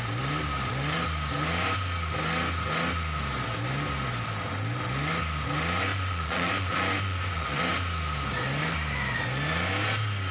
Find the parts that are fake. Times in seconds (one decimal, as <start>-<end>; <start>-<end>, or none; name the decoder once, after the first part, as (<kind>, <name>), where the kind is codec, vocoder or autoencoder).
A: 5.9-7.6 (vocoder, Vocos)